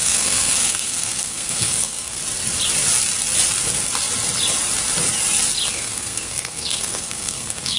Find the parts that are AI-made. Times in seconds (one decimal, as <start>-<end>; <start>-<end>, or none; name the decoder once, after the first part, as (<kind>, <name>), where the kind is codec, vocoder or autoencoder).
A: 0.0-2.2 (codec, SNAC); 5.7-7.8